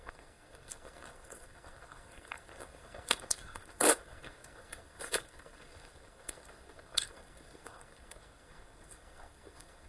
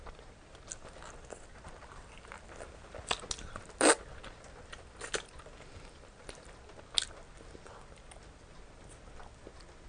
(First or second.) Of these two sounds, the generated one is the first